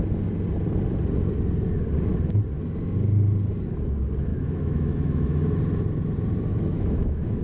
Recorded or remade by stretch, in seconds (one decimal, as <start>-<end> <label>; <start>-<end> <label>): 0.0-4.3 recorded; 4.3-5.6 remade; 5.6-6.5 recorded; 6.5-7.4 remade